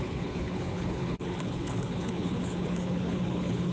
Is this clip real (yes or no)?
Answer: no